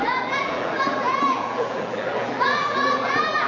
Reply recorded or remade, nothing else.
remade